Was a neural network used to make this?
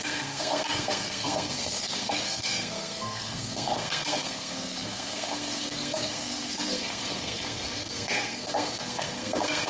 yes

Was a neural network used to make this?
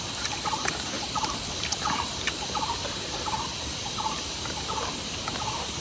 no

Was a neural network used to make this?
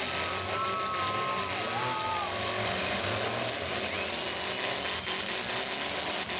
no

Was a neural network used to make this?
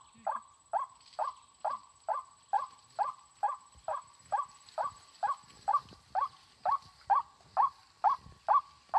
no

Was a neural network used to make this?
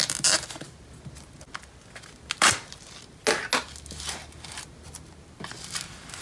no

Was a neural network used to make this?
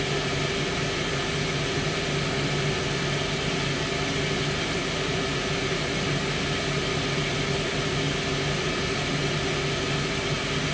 no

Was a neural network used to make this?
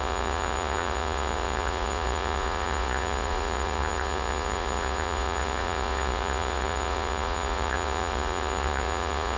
yes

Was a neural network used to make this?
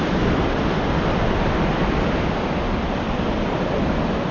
no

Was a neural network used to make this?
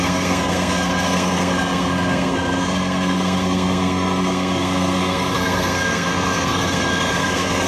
yes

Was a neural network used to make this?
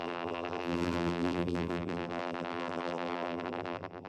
yes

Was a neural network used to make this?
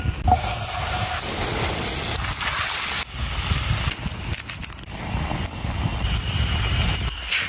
no